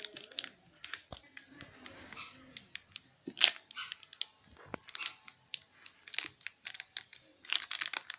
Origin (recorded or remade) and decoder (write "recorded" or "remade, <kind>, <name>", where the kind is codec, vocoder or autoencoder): recorded